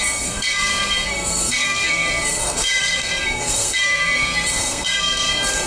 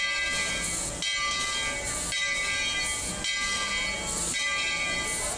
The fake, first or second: first